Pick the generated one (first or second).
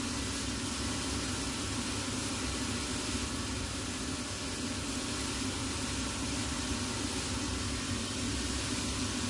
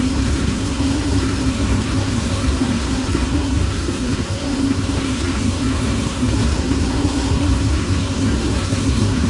second